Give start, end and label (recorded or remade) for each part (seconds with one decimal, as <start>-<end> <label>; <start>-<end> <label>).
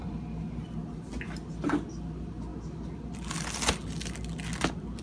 0.0-5.0 recorded